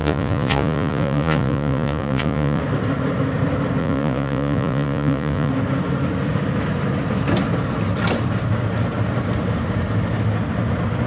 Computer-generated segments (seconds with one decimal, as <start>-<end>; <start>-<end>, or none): 0.0-2.6; 3.8-5.5